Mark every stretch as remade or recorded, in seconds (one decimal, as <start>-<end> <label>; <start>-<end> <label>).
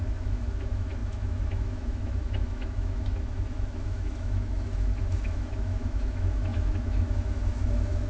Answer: 0.0-8.1 remade